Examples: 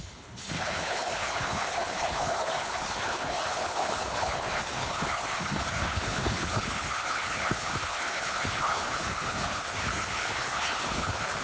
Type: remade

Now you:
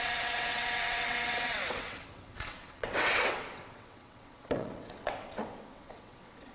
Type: remade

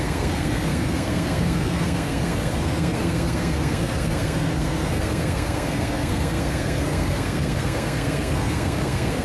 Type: remade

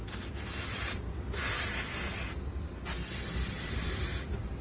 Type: recorded